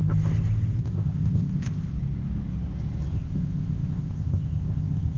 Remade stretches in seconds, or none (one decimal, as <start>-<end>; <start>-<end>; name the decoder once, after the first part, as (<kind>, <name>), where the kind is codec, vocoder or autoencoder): 0.8-1.9 (codec, ZipCodec); 3.1-5.2